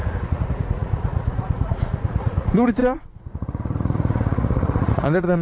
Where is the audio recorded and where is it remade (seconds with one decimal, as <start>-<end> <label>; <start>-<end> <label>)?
0.0-5.4 remade